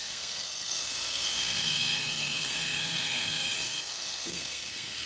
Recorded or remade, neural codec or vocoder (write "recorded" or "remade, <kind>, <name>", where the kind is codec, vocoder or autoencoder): remade, codec, SNAC